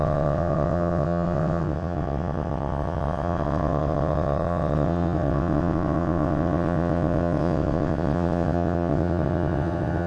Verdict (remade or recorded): remade